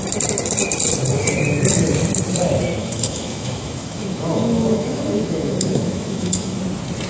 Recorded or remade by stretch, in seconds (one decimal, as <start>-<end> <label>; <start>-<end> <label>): 0.0-2.8 recorded; 2.8-6.6 remade; 6.6-7.1 recorded

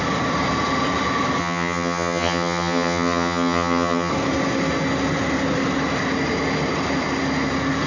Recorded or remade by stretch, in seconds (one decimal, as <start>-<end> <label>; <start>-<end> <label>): 0.0-1.4 recorded; 1.4-4.1 remade; 4.1-7.9 recorded

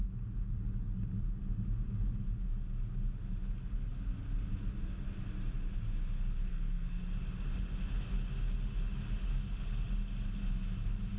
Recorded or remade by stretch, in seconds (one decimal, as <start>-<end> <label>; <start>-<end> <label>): 0.0-6.5 recorded; 6.5-7.0 remade; 7.0-11.2 recorded

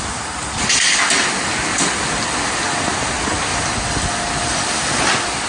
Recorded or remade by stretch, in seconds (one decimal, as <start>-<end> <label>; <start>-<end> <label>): 0.0-5.5 recorded

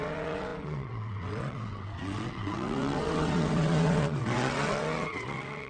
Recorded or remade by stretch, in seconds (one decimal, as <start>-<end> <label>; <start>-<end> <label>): 0.0-5.7 remade

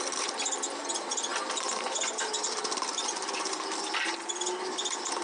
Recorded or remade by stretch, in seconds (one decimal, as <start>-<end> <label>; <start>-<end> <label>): 0.0-1.3 recorded; 1.3-4.4 remade; 4.4-5.2 recorded

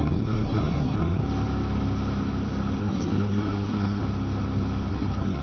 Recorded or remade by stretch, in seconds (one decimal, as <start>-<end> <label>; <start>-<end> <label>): 0.0-1.2 remade; 1.2-2.8 recorded; 2.8-4.0 remade; 4.0-4.9 recorded; 4.9-5.4 remade